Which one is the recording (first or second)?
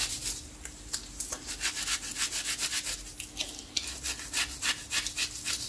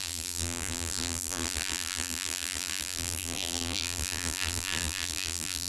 first